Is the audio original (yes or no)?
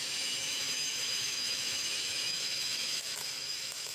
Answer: no